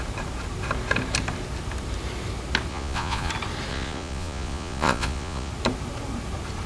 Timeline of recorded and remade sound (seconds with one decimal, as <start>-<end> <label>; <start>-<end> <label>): 0.0-2.7 recorded; 2.7-3.3 remade; 3.3-3.7 recorded; 3.7-5.5 remade; 5.5-6.7 recorded